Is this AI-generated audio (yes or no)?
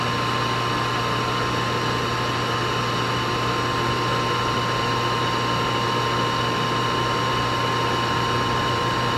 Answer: no